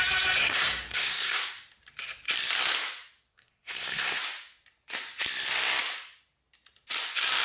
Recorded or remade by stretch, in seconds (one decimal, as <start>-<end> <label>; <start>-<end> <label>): 0.0-0.4 recorded; 0.4-1.4 remade; 1.4-3.3 recorded; 3.3-4.2 remade; 4.2-7.4 recorded